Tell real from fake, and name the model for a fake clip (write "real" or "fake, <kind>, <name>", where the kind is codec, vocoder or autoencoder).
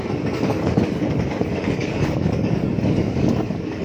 fake, codec, DAC